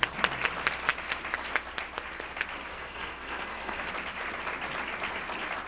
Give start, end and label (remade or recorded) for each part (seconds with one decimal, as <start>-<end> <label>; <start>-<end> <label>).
0.0-2.7 recorded; 2.7-3.9 remade; 3.9-5.7 recorded